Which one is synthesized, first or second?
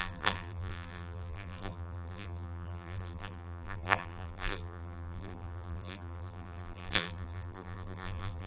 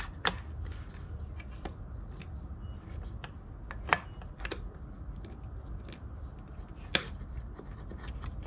first